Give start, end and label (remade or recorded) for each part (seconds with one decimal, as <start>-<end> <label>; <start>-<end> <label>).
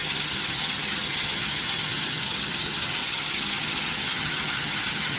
0.0-5.2 remade